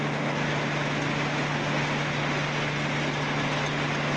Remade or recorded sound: recorded